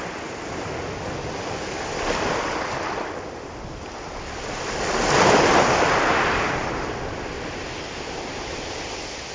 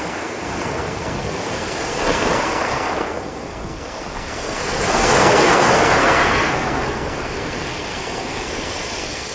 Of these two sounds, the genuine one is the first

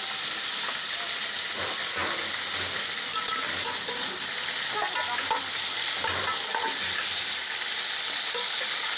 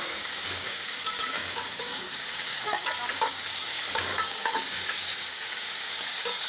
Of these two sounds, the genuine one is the first